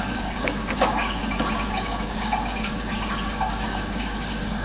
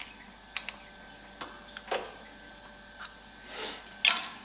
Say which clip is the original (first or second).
second